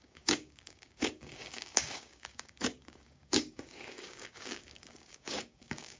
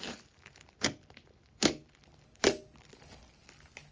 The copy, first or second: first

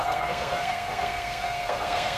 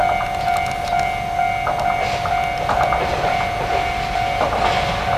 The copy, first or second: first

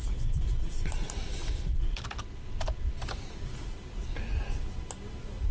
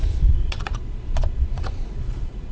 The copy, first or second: second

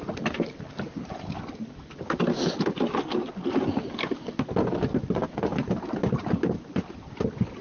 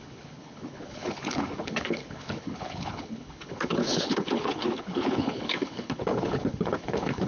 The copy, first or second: second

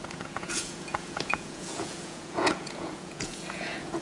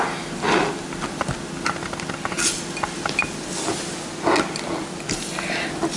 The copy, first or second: first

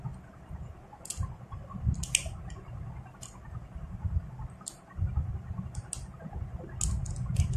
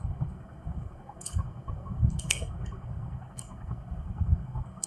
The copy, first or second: second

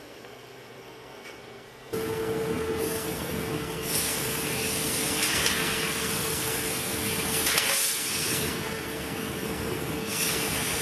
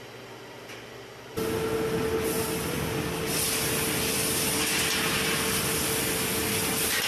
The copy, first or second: first